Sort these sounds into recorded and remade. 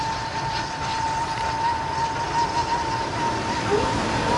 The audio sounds recorded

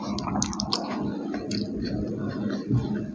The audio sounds recorded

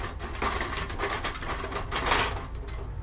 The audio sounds recorded